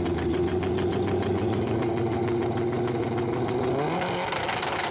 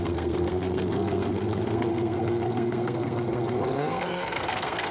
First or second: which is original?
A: first